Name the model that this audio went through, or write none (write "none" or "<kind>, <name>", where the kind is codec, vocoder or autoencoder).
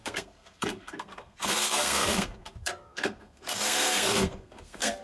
codec, SNAC